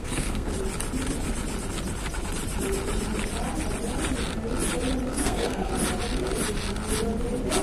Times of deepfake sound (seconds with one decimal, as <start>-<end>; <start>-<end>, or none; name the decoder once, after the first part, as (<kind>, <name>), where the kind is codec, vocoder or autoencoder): 0.0-0.5 (codec, SNAC); 5.1-5.7